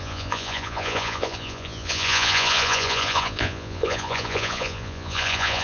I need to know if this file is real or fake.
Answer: fake